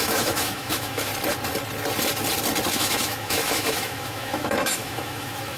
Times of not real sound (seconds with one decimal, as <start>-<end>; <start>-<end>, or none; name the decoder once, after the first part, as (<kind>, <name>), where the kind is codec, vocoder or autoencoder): 0.0-1.1 (autoencoder, DAC-VAE); 2.7-5.6